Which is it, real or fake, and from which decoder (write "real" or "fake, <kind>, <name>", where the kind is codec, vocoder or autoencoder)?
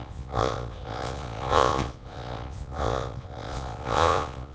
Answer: fake, vocoder, Vocos